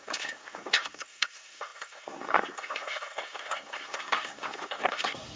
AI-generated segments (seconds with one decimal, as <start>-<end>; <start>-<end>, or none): 0.0-5.4